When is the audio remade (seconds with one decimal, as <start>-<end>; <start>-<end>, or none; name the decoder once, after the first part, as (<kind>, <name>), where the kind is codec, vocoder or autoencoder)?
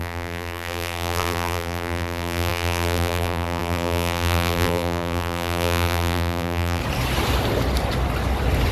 0.0-6.8 (vocoder, BigVGAN v2)